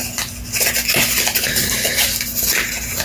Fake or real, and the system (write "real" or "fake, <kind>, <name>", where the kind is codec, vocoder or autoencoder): real